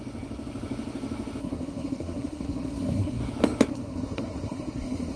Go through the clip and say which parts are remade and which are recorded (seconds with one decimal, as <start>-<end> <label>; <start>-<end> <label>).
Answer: 0.0-1.4 recorded; 1.4-3.2 remade; 3.2-3.7 recorded; 3.7-5.2 remade